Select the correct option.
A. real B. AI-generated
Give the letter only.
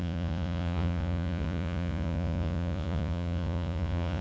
B